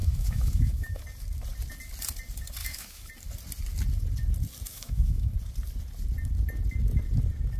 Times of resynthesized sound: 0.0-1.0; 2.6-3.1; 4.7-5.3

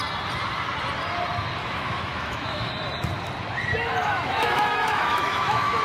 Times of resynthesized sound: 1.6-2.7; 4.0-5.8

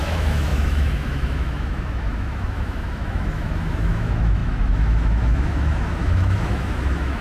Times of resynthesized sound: 0.0-7.2

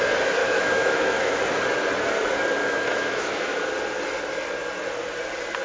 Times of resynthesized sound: 0.4-1.4; 2.6-3.6

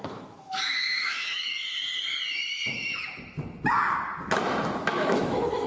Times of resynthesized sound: 0.0-1.4; 4.8-5.7